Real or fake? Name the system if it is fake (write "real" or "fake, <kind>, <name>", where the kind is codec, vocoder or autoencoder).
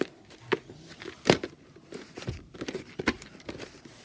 real